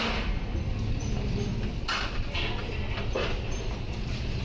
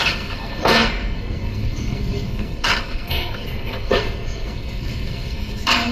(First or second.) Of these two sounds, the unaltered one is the first